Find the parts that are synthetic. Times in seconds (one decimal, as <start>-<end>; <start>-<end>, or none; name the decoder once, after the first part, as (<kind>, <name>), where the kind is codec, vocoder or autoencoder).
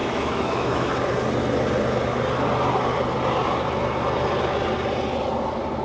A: 0.0-0.9 (autoencoder, DAC-VAE)